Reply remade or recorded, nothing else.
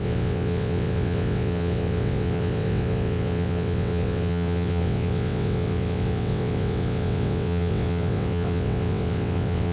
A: remade